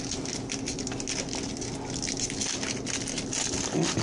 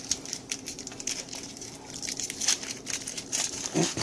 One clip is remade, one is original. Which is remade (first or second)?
second